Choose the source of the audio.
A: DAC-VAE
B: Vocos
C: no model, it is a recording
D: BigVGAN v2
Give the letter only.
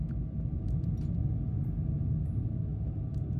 C